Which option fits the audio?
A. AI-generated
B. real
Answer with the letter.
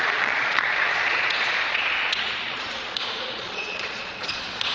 A